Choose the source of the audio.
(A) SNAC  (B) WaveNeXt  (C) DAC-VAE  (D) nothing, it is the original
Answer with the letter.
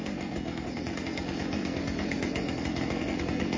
A